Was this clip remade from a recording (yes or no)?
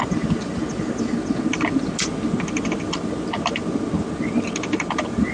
no